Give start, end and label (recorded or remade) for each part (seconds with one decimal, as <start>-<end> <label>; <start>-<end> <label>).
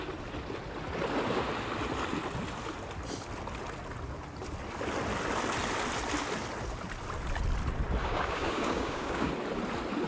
0.0-8.0 recorded; 8.0-9.3 remade; 9.3-10.1 recorded